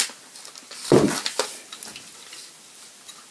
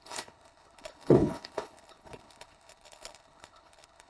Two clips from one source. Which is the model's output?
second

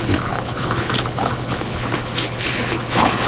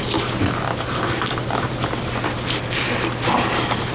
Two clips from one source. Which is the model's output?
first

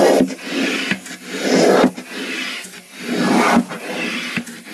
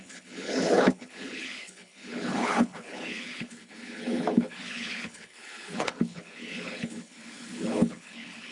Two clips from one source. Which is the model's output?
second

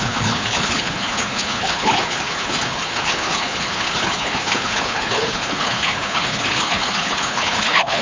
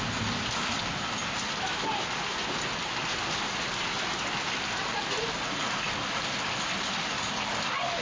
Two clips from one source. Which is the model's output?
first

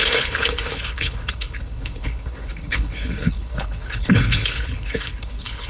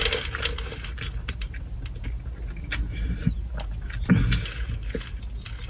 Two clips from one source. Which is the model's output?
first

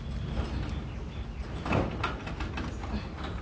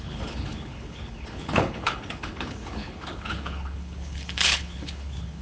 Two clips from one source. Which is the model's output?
second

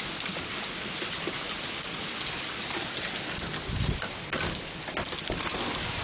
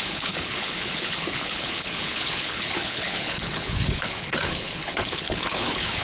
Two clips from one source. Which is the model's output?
second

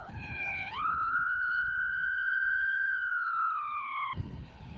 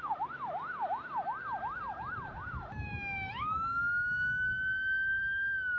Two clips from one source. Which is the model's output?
first